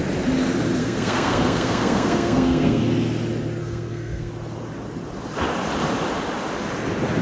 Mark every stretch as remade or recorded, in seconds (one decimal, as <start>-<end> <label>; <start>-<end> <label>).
0.0-0.8 recorded; 0.8-2.8 remade; 2.8-3.6 recorded; 3.6-4.3 remade; 4.3-7.2 recorded